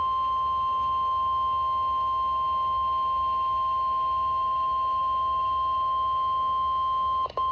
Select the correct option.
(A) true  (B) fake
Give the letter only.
B